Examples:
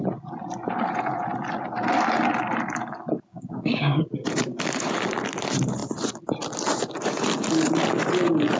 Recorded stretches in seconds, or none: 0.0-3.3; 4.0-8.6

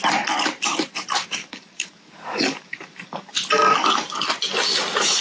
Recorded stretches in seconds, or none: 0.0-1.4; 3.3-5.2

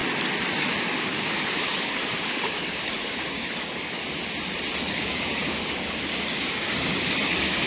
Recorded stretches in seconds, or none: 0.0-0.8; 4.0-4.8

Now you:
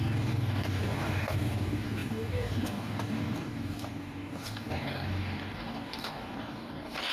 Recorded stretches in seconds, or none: none